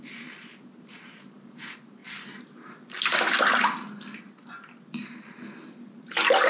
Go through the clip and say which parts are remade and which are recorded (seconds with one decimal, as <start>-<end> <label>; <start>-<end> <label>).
0.0-2.0 remade; 2.0-5.9 recorded; 5.9-6.5 remade